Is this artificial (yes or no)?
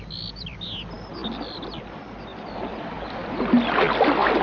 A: no